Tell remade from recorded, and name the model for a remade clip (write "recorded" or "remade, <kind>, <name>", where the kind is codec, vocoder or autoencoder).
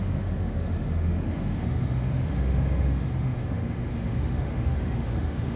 remade, autoencoder, DAC-VAE